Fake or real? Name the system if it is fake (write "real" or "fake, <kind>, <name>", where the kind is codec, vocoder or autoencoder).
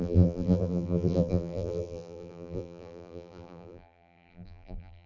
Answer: fake, vocoder, BigVGAN v2